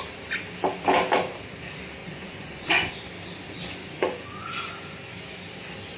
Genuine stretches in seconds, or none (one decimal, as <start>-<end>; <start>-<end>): 0.0-2.0; 2.9-3.8; 4.7-6.0